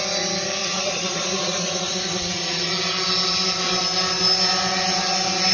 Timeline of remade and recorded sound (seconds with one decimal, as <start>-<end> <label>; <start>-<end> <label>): 0.0-0.6 recorded; 0.6-2.7 remade; 2.7-5.5 recorded